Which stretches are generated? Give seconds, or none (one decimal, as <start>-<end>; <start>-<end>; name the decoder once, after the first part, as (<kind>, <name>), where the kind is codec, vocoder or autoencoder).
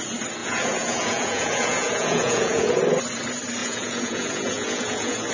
0.4-2.8 (vocoder, Vocos); 3.6-5.3